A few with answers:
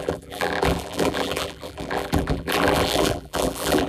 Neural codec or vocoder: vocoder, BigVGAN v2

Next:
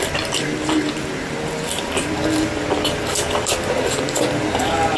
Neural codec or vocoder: vocoder, BigVGAN v2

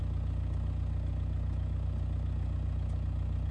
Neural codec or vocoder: none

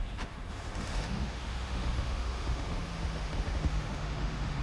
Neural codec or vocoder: autoencoder, DAC-VAE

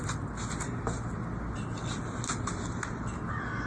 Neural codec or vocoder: none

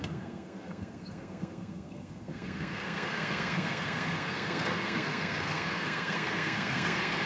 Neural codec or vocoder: codec, SNAC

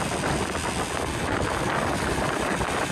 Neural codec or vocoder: none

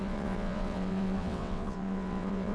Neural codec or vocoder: vocoder, WaveNeXt